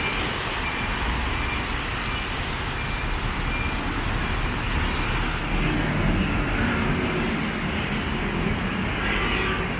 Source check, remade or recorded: recorded